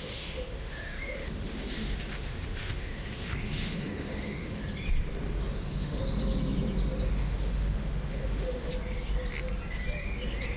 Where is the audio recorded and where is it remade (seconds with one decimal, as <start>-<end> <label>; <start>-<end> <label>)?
0.0-4.6 remade; 4.6-5.5 recorded; 5.5-6.0 remade; 6.0-7.1 recorded; 7.1-8.7 remade; 8.7-10.6 recorded